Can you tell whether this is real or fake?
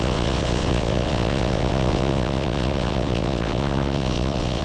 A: fake